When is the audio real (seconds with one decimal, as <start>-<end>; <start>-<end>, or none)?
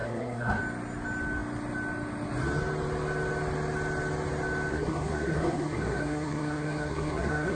0.6-4.7